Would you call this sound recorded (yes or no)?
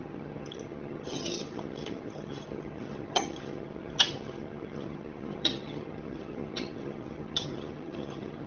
no